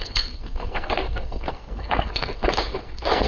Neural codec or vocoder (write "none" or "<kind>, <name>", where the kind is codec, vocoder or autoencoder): codec, SNAC